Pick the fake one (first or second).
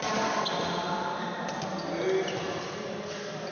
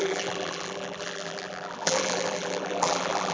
second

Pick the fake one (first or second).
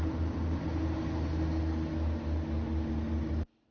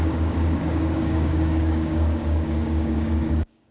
second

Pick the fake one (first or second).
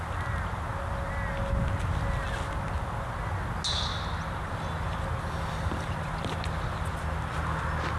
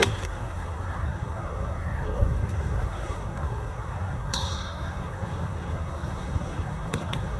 second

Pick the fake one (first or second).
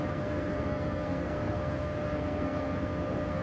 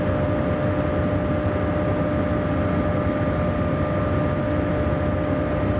first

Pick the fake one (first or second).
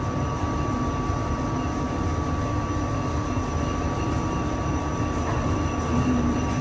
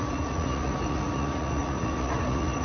second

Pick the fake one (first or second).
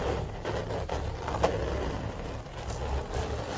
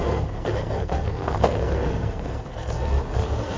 second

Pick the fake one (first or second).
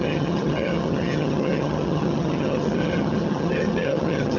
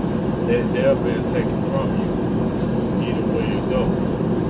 first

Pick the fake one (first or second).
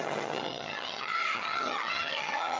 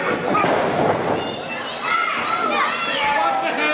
first